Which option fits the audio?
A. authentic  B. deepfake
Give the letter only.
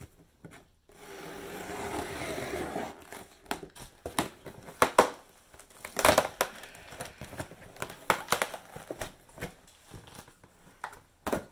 A